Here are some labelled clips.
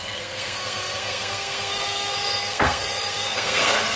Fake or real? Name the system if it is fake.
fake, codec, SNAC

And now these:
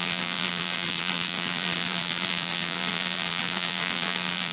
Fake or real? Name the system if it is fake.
fake, vocoder, BigVGAN v2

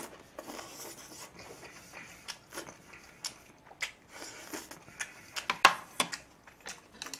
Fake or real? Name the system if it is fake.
real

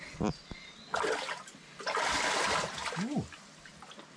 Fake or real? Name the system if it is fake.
real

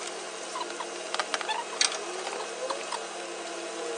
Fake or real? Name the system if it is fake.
real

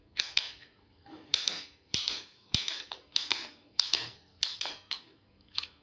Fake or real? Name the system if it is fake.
fake, codec, SNAC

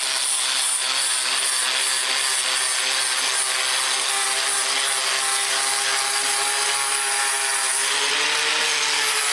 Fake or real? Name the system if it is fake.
real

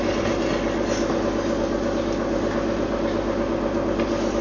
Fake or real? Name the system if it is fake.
real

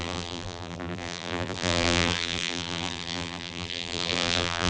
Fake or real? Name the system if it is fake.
fake, vocoder, BigVGAN v2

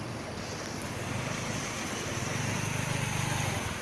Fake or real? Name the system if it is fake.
real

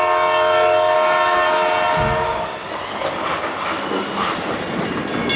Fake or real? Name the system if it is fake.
real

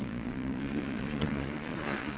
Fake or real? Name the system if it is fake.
fake, vocoder, Vocos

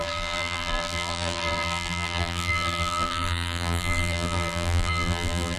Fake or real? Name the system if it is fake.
fake, vocoder, BigVGAN v2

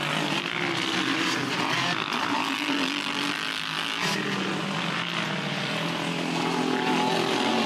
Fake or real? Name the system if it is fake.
real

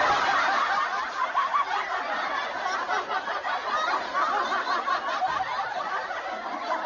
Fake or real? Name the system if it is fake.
real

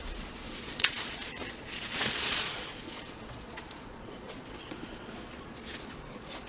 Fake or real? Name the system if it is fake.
fake, vocoder, Vocos